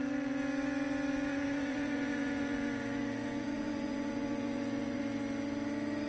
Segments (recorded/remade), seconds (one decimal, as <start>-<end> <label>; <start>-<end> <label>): 0.0-1.3 recorded; 1.3-5.0 remade; 5.0-6.1 recorded